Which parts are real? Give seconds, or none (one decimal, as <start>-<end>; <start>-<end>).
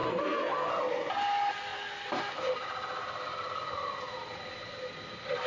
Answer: 0.7-5.5